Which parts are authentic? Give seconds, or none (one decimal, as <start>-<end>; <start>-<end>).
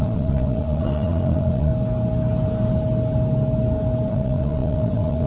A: 1.7-4.1